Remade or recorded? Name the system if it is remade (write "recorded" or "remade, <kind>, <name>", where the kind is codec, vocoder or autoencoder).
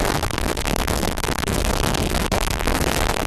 remade, codec, SNAC